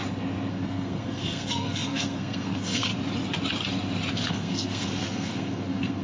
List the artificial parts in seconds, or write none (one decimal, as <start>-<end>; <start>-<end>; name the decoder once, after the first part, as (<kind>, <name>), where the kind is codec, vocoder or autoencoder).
0.5-2.9 (codec, SNAC); 4.1-6.0